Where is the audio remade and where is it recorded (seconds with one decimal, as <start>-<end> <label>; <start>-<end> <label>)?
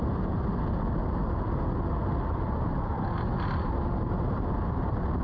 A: 0.0-5.2 recorded